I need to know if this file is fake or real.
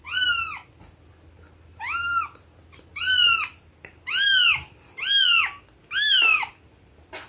real